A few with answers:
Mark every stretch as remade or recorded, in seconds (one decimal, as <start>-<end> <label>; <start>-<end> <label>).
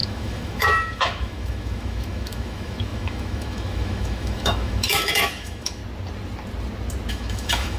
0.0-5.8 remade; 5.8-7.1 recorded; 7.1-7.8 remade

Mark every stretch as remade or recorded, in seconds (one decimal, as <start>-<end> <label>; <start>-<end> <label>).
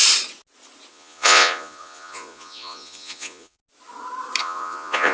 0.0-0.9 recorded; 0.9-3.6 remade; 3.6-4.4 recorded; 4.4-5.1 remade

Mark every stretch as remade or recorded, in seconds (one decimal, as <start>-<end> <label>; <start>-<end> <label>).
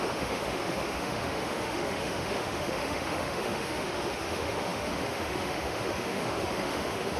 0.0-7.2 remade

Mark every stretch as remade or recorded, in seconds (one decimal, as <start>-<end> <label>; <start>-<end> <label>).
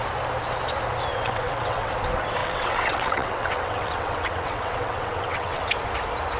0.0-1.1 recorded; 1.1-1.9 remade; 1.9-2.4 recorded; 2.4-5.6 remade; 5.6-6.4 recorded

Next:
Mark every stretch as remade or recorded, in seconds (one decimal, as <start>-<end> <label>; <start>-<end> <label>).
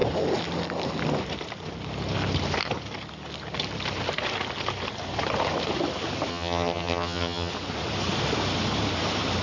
0.0-6.3 recorded; 6.3-7.5 remade; 7.5-9.4 recorded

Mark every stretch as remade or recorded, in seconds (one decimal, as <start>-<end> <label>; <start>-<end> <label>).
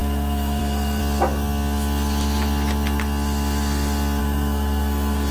0.0-1.0 remade; 1.0-4.2 recorded; 4.2-5.3 remade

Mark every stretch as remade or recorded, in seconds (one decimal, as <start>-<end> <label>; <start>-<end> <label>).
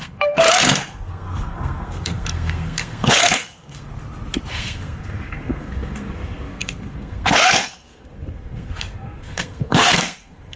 0.0-3.9 remade; 3.9-4.5 recorded; 4.5-10.6 remade